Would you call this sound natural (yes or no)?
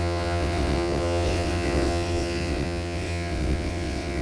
no